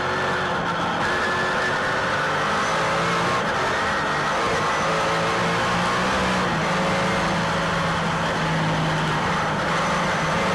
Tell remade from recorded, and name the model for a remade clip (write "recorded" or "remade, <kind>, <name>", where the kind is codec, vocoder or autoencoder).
recorded